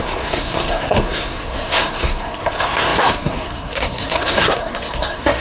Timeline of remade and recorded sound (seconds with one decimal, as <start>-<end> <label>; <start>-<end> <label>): 0.0-5.4 remade